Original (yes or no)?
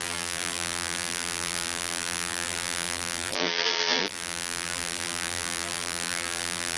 no